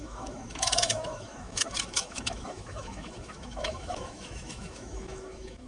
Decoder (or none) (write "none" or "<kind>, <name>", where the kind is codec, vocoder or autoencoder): autoencoder, DAC-VAE